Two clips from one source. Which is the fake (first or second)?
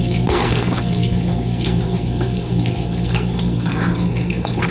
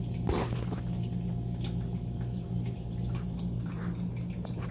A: first